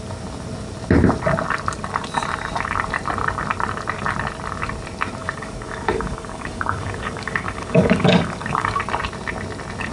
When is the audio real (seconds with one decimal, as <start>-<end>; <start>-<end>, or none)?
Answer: 0.0-5.2; 8.8-9.9

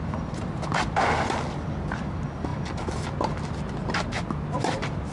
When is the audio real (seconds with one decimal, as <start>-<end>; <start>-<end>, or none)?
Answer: 0.0-5.1

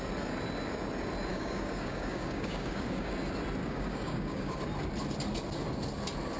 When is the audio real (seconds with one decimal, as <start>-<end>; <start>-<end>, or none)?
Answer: 0.0-1.3; 3.1-3.6; 4.6-6.4

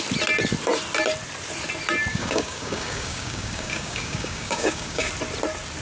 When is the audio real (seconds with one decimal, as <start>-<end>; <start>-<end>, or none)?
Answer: 0.0-2.1; 5.1-5.8

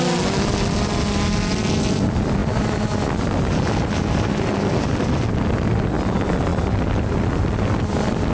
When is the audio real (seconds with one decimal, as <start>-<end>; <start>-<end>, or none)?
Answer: 0.0-8.3

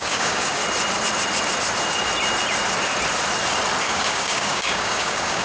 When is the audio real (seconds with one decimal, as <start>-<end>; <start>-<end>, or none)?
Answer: 0.6-3.8

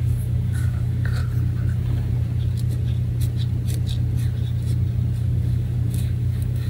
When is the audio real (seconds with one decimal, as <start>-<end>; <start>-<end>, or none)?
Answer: 1.2-5.2